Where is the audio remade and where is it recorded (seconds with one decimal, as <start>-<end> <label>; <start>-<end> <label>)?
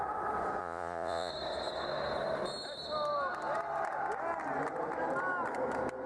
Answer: 0.0-0.6 recorded; 0.6-1.3 remade; 1.3-6.1 recorded